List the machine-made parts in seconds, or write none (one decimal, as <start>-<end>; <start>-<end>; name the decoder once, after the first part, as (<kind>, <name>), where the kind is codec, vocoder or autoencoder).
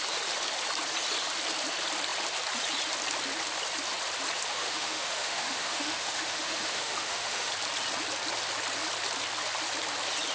4.5-7.5 (autoencoder, DAC-VAE)